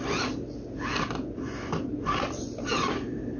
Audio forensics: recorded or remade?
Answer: recorded